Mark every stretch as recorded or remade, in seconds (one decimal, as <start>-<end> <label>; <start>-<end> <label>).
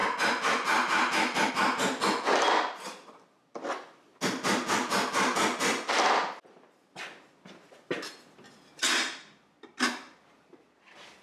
0.0-11.2 recorded